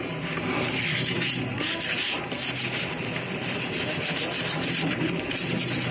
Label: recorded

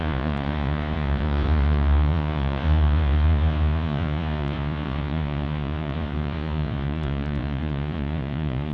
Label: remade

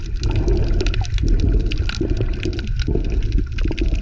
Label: recorded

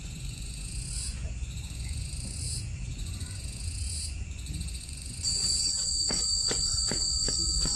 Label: remade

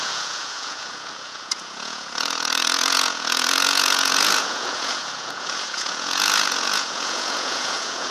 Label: remade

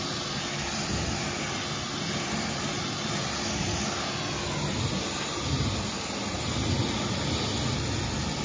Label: recorded